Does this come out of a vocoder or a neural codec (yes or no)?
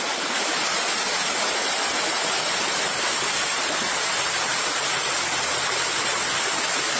no